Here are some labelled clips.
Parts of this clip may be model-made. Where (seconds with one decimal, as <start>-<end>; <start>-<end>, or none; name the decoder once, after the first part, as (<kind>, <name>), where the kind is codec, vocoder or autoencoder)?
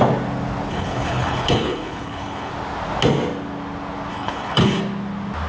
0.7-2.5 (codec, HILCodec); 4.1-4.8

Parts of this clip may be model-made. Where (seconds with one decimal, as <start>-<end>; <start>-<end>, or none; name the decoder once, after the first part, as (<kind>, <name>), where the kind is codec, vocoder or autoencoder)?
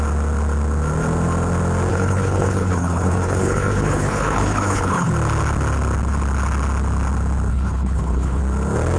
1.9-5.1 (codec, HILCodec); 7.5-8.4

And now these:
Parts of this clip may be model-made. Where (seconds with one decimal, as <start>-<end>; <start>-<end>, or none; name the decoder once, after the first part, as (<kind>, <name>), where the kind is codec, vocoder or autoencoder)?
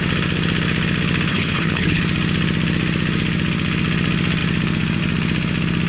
1.3-2.0 (codec, HILCodec)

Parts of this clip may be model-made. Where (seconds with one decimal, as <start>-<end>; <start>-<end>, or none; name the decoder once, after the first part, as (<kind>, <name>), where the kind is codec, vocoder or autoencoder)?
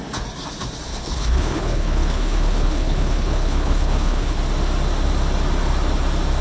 0.9-4.4 (codec, HILCodec)